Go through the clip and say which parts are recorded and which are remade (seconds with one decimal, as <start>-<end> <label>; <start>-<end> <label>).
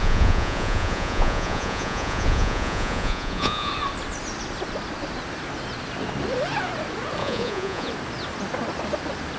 0.0-3.7 remade; 3.7-7.2 recorded; 7.2-7.9 remade; 7.9-9.4 recorded